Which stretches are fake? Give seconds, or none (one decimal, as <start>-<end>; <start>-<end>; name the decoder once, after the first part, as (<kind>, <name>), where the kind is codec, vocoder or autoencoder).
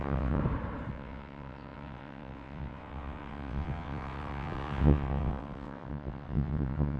0.0-0.4 (vocoder, WaveNeXt); 0.9-7.0